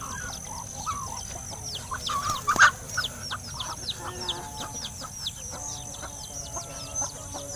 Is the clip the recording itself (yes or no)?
yes